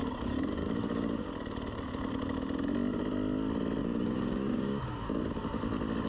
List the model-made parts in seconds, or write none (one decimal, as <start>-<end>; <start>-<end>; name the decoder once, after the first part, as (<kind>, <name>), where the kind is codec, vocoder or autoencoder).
0.0-1.2 (codec, DAC); 3.8-5.2